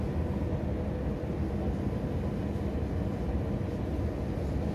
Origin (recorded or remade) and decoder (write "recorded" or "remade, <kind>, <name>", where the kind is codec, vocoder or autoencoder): recorded